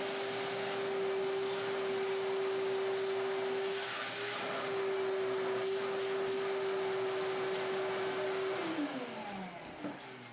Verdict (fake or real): real